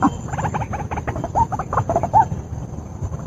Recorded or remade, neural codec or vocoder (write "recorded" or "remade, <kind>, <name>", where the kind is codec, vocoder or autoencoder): recorded